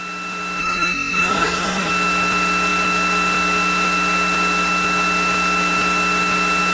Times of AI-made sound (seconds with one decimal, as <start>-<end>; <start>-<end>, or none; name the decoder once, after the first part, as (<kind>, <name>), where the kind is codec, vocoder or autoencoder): 0.6-1.9 (codec, SNAC)

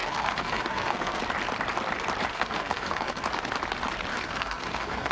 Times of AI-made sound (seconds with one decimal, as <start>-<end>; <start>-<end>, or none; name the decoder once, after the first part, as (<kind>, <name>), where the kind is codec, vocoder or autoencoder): 0.0-1.2 (codec, SNAC); 2.3-3.2; 4.1-5.1

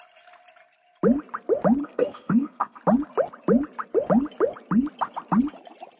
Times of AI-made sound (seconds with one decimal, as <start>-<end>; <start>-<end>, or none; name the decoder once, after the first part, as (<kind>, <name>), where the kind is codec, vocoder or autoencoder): 1.8-2.8 (codec, SNAC)

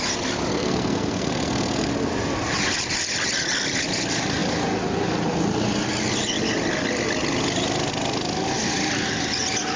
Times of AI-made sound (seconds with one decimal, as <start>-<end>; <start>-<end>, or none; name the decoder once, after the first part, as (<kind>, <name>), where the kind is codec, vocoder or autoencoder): 0.5-1.9 (codec, SNAC)

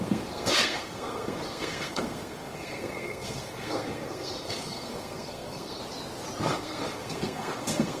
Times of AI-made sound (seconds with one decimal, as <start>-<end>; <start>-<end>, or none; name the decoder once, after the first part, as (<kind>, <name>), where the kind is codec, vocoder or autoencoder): 0.0-5.8 (codec, SNAC); 6.5-8.0

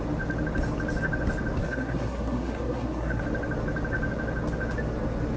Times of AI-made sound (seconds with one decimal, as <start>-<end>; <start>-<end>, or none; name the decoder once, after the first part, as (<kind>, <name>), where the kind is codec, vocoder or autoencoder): 1.6-3.2 (codec, SNAC)

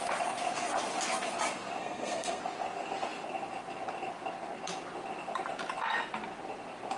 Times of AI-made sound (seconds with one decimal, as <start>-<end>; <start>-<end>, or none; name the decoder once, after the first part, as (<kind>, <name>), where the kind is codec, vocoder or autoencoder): 1.8-2.4 (codec, SNAC)